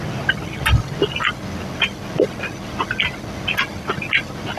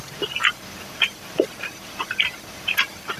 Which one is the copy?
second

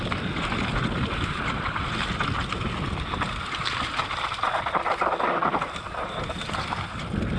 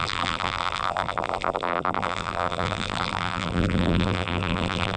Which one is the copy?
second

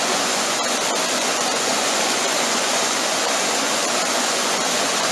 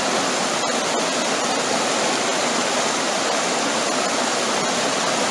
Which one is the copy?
first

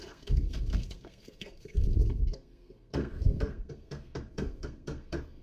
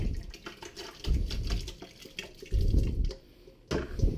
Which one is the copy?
first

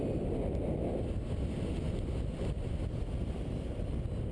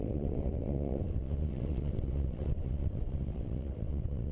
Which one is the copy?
second